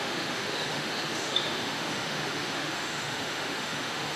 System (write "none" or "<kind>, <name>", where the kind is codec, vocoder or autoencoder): autoencoder, DAC-VAE